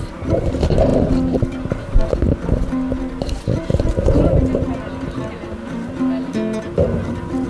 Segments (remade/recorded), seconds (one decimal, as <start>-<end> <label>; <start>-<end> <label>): 0.0-7.5 recorded